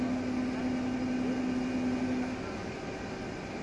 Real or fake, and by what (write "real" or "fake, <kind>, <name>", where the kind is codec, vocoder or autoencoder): real